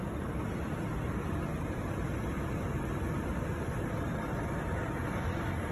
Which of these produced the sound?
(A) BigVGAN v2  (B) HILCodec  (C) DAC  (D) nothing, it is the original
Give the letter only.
A